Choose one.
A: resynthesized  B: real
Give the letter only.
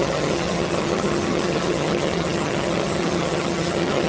A